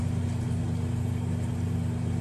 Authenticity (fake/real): fake